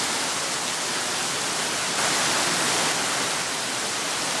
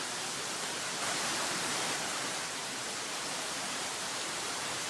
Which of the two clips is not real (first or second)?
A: second